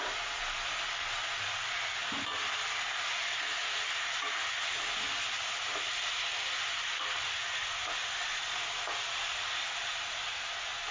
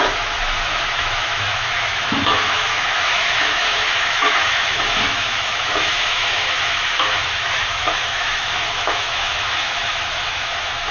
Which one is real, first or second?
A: first